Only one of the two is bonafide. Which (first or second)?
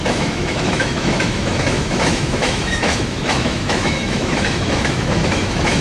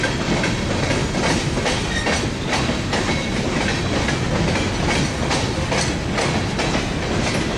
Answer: second